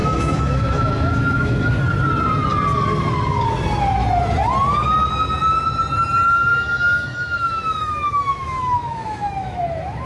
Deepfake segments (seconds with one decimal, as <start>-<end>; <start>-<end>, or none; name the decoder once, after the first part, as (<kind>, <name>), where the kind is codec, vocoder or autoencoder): 0.0-1.8 (autoencoder, DAC-VAE); 6.5-9.6